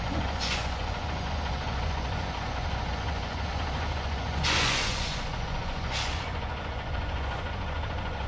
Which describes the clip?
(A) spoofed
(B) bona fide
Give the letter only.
A